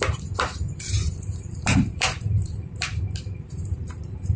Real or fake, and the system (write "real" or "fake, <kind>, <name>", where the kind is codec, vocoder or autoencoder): fake, vocoder, BigVGAN v2